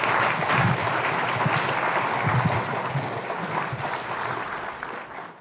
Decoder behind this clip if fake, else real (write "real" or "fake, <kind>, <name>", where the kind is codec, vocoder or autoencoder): real